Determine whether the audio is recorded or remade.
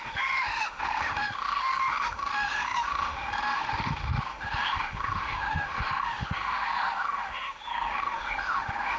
remade